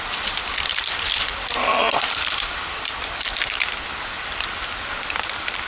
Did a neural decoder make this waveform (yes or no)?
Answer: yes